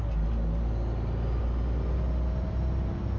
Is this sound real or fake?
real